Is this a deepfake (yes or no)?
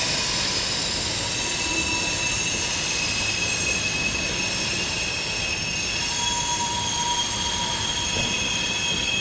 no